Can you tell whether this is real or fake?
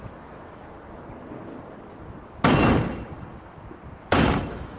real